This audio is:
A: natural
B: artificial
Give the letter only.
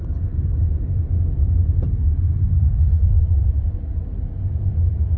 A